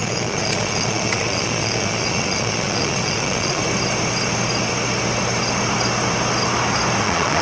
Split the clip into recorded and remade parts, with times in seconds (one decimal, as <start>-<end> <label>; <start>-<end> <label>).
0.0-3.6 remade; 3.6-7.0 recorded; 7.0-7.4 remade